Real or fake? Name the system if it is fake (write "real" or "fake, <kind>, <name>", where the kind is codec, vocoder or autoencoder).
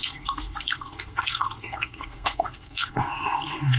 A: fake, codec, SNAC